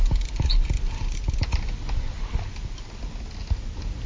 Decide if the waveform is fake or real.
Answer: real